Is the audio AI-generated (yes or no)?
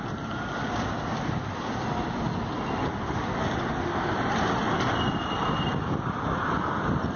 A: no